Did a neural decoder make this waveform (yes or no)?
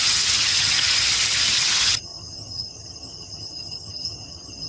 yes